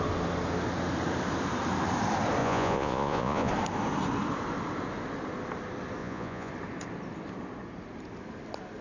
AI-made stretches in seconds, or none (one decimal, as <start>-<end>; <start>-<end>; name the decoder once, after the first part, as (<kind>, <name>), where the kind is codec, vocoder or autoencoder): 2.4-3.5 (vocoder, Vocos); 6.0-6.5